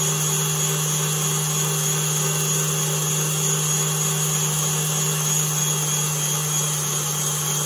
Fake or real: real